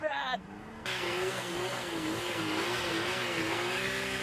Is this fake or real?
fake